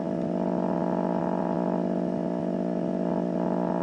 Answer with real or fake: real